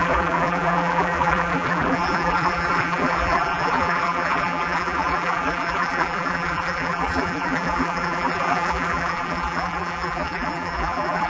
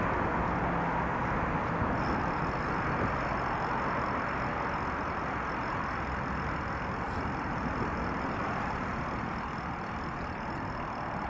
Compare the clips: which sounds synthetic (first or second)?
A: first